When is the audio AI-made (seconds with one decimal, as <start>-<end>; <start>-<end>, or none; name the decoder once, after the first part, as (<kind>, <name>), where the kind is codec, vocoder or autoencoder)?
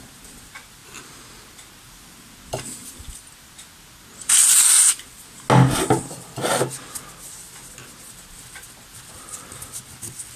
none